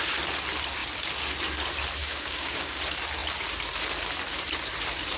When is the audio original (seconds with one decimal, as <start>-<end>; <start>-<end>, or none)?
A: 0.0-2.0; 2.8-5.2